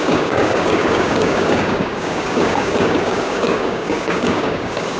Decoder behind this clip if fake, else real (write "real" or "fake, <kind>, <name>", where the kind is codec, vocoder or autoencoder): fake, codec, DAC